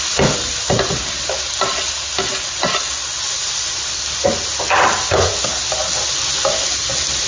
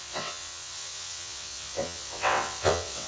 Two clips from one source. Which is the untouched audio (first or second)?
first